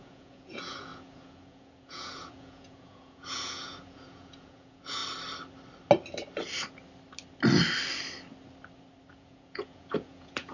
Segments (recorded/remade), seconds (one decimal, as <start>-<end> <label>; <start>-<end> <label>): 0.0-5.0 remade; 5.0-9.1 recorded; 9.1-10.5 remade